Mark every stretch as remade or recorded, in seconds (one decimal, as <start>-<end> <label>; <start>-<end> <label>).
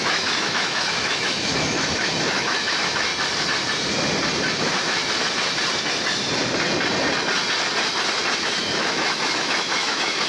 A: 0.0-3.1 remade; 3.1-4.6 recorded; 4.6-5.0 remade; 5.0-8.4 recorded; 8.4-10.3 remade